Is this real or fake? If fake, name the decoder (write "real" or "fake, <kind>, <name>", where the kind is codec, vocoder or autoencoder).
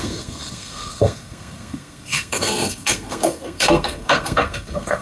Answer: fake, codec, SNAC